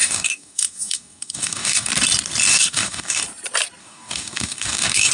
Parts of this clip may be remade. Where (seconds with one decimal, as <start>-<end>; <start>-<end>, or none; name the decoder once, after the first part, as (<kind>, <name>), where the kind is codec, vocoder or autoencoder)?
0.0-1.9 (codec, DAC); 2.5-3.2; 3.8-5.1